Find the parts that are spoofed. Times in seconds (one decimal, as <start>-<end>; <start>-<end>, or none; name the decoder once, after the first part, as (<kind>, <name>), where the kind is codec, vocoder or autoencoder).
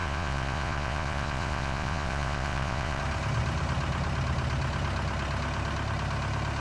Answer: 0.0-3.0 (vocoder, Vocos)